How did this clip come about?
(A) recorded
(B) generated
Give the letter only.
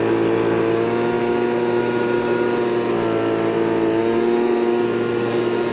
A